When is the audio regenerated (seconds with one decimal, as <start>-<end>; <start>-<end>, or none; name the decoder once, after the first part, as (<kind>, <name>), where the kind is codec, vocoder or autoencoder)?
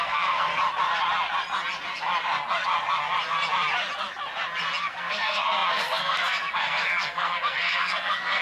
0.0-0.5 (codec, SNAC); 4.8-8.4